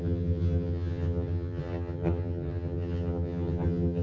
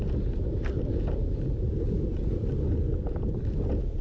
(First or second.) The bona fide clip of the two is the second